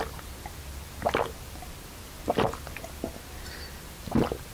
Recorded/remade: recorded